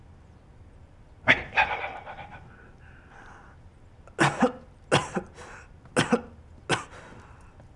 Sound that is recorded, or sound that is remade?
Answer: recorded